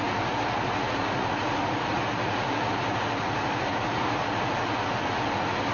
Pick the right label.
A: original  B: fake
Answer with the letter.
B